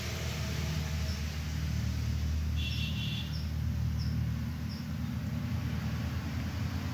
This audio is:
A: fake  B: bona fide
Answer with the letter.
B